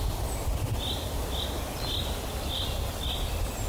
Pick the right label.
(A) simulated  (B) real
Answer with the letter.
B